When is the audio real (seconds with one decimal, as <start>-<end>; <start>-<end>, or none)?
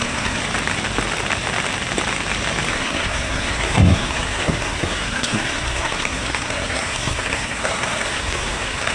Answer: 0.4-2.7